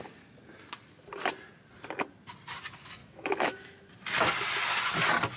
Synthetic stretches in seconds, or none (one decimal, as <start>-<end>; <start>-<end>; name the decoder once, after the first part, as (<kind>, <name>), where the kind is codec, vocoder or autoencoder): 3.0-3.9 (autoencoder, DAC-VAE)